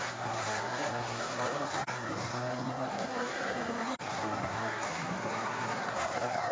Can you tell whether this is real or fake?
fake